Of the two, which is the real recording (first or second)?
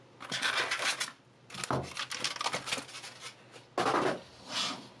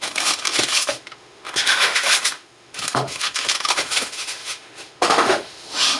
first